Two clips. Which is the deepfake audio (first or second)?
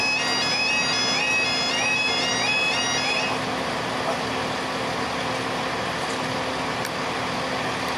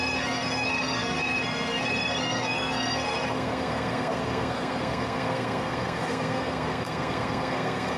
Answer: second